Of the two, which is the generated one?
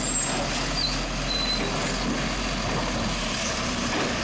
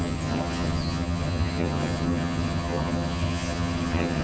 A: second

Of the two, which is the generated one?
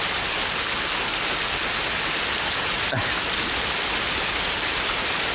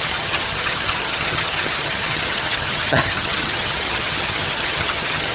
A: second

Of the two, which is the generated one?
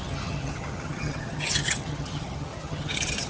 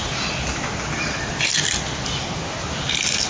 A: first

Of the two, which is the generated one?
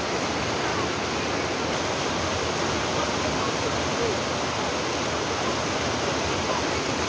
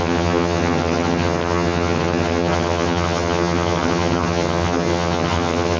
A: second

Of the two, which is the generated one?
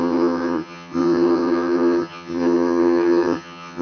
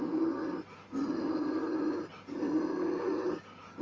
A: first